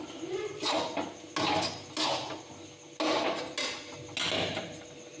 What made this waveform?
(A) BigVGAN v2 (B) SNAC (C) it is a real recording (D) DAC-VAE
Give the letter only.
C